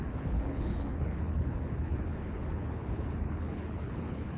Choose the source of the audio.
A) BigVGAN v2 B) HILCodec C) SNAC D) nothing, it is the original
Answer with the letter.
B